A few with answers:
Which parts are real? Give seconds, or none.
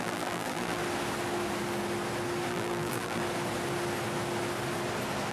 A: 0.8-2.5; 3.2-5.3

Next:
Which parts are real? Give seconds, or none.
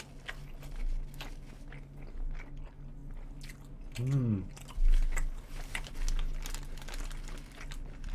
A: 0.0-8.1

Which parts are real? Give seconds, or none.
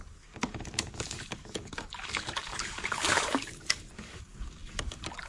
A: none